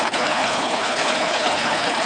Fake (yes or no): yes